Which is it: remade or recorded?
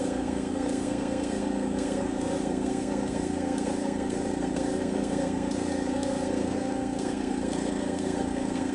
remade